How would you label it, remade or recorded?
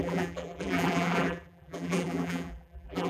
remade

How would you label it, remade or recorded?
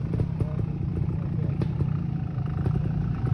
remade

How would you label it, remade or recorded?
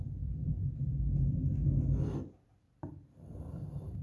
remade